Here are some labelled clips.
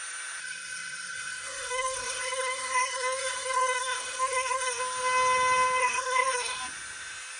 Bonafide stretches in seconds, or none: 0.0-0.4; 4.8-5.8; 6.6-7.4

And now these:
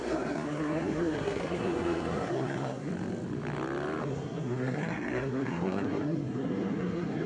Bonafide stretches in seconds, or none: 2.9-4.0

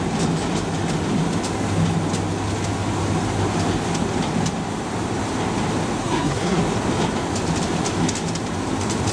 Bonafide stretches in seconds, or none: 0.0-6.0; 6.6-9.1